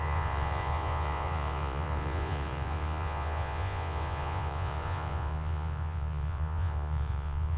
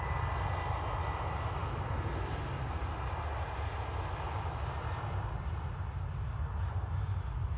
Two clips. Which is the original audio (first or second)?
second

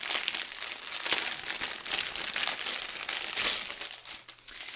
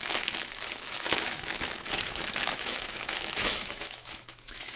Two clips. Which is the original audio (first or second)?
first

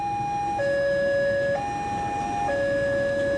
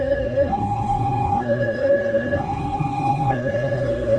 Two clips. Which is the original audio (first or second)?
first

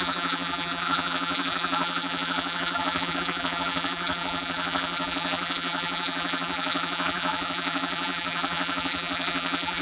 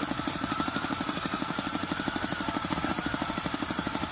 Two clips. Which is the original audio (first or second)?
second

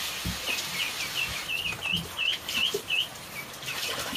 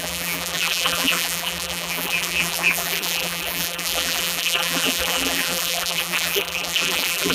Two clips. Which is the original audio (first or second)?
first